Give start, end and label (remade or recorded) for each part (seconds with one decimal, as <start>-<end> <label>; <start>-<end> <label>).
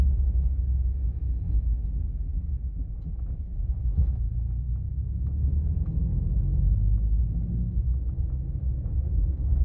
0.0-2.3 remade; 2.3-3.2 recorded; 3.2-9.6 remade